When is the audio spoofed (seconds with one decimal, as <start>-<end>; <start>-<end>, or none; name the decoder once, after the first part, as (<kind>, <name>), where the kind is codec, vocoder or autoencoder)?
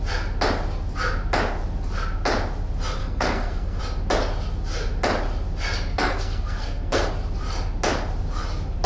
3.0-3.8 (codec, SNAC); 5.9-7.1